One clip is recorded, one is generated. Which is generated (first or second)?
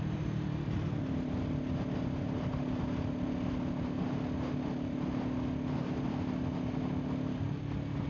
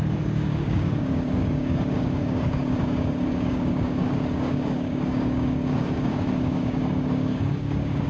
second